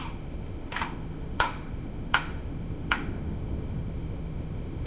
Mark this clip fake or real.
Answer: fake